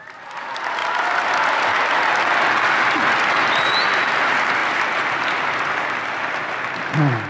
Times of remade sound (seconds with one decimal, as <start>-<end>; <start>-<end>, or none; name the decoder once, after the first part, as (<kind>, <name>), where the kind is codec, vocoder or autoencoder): none